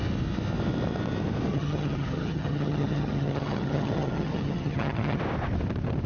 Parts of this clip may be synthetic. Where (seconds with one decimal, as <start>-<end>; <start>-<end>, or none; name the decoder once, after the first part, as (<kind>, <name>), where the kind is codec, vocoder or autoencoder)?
1.5-5.2 (vocoder, HiFi-GAN)

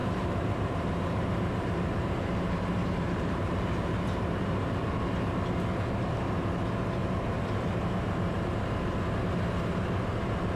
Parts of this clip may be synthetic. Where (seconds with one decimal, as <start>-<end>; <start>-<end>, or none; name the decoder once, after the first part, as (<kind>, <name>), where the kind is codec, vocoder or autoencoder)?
0.0-4.4 (vocoder, BigVGAN v2); 7.0-8.4

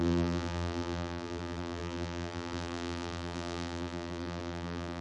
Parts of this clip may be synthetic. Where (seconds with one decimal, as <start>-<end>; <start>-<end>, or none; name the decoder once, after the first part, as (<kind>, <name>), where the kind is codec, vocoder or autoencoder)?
0.0-5.0 (vocoder, BigVGAN v2)